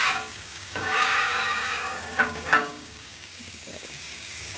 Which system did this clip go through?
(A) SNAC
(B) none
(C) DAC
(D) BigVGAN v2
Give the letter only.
C